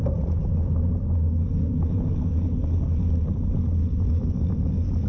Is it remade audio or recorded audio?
recorded